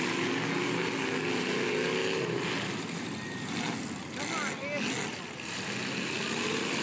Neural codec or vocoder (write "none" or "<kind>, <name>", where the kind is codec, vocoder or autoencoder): none